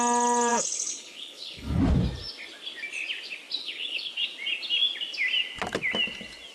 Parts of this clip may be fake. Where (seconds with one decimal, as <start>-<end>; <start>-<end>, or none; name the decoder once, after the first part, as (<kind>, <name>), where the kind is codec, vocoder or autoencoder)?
0.5-1.8 (codec, HILCodec); 3.6-4.1